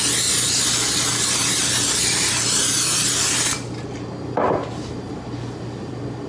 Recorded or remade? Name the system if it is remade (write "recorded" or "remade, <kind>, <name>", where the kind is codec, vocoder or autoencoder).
recorded